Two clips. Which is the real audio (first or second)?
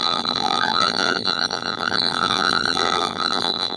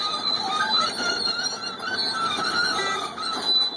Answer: second